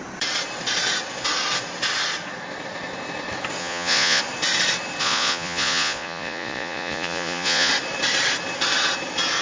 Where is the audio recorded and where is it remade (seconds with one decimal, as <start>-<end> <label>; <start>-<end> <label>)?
0.0-3.6 recorded; 3.6-4.2 remade; 4.2-5.0 recorded; 5.0-7.7 remade; 7.7-9.4 recorded

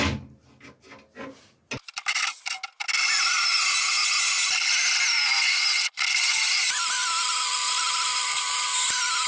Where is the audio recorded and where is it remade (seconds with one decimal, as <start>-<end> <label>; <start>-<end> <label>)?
0.0-9.3 recorded

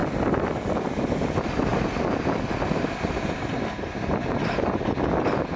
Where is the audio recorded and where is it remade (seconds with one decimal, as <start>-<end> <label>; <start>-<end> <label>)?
0.0-5.6 recorded

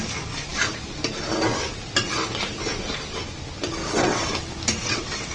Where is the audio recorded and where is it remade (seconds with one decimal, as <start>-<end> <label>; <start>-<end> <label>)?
0.0-3.8 recorded; 3.8-4.3 remade; 4.3-4.8 recorded; 4.8-5.3 remade